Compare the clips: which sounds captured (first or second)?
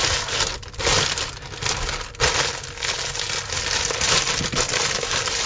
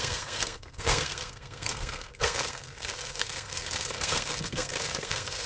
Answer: first